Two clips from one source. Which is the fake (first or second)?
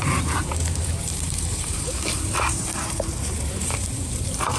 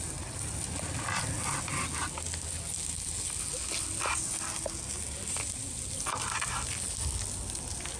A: first